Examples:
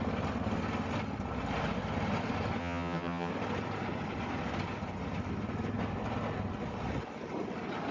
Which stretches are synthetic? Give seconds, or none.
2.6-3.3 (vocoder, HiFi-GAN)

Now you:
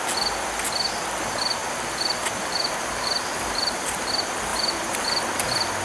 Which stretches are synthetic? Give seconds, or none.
1.6-4.1 (vocoder, BigVGAN v2); 4.5-5.3

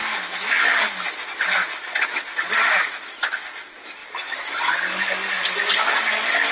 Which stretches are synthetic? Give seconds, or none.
4.0-4.6 (vocoder, BigVGAN v2)

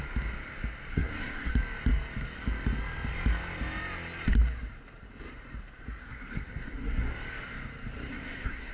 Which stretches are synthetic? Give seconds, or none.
0.9-1.5 (codec, SNAC); 6.0-7.1; 8.1-8.7

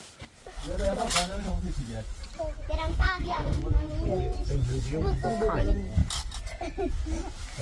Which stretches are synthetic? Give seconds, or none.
2.9-3.6 (autoencoder, DAC-VAE)

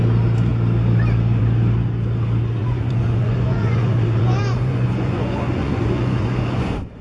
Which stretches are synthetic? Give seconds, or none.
2.6-7.0 (vocoder, Vocos)